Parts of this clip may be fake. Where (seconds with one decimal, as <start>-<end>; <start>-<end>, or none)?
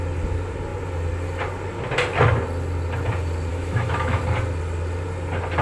3.5-4.2